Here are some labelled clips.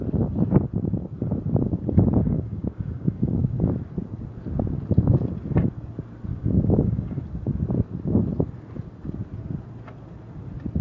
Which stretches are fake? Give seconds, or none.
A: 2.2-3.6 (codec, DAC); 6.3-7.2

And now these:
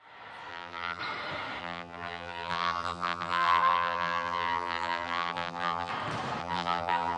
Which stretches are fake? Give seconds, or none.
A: 0.5-1.0 (vocoder, BigVGAN v2); 1.6-5.9; 6.4-7.2

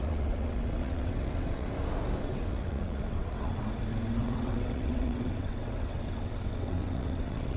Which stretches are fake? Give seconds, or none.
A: 0.0-1.7 (vocoder, WaveNeXt); 2.2-3.6; 4.2-7.6

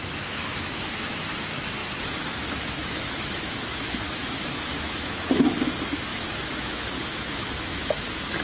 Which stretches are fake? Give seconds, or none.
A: 0.0-1.8 (autoencoder, DAC-VAE); 2.5-8.4